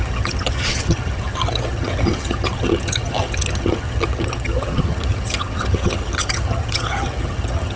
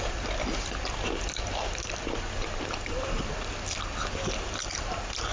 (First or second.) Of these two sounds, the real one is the second